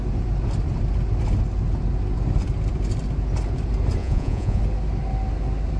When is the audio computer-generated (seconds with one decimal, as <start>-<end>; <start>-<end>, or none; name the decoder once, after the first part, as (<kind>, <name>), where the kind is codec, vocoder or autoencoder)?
4.0-4.6 (vocoder, Vocos)